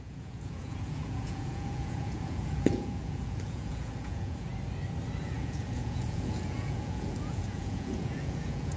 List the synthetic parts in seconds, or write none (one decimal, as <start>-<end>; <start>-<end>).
0.0-4.5; 5.2-8.8